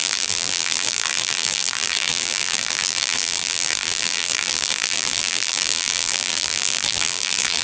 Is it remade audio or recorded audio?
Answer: remade